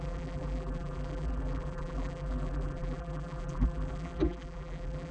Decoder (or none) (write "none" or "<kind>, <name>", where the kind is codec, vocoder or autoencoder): vocoder, BigVGAN v2